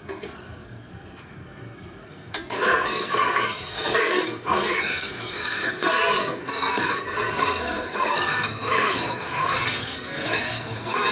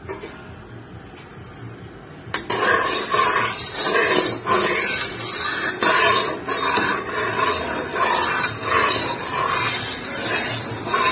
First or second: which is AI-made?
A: first